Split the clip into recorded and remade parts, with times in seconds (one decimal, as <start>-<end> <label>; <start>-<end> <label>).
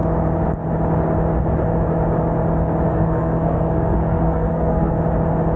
0.0-2.9 recorded; 2.9-4.9 remade; 4.9-5.6 recorded